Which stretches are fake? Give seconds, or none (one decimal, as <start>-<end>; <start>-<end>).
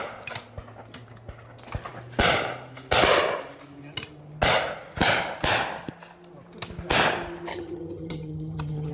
7.5-8.9